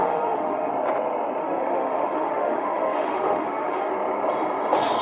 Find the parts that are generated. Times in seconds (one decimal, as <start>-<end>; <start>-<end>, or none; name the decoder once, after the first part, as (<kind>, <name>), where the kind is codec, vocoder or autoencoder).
0.0-0.7 (autoencoder, DAC-VAE); 1.4-3.9

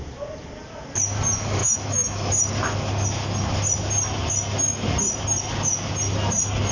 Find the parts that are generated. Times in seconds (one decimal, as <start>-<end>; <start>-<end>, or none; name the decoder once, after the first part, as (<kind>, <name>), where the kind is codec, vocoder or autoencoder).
1.6-2.3 (autoencoder, DAC-VAE)

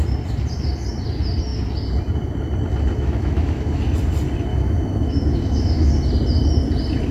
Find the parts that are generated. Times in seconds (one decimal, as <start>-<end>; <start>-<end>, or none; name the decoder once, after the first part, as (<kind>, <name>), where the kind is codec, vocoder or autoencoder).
2.9-3.8 (autoencoder, DAC-VAE); 4.5-5.9

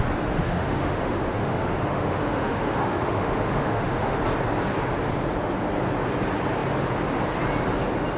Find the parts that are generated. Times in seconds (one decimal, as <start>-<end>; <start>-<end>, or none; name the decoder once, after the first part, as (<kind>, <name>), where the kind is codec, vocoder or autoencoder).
0.4-4.2 (autoencoder, DAC-VAE)

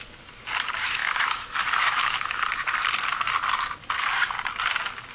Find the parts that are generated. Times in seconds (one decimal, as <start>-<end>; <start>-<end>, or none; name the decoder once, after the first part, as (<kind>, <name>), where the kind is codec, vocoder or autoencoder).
1.0-2.4 (autoencoder, DAC-VAE)